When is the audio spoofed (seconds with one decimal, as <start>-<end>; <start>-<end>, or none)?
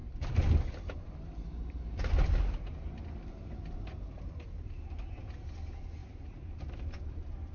6.0-6.9